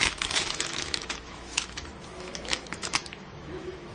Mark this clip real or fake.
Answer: fake